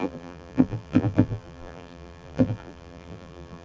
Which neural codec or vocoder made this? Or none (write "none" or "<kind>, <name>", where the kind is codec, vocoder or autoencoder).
vocoder, BigVGAN v2